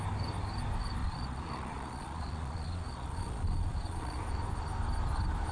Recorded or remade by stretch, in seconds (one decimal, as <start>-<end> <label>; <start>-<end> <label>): 0.0-1.0 recorded; 1.0-4.2 remade; 4.2-5.5 recorded